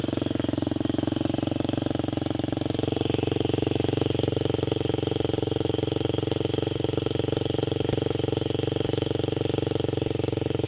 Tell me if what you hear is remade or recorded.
remade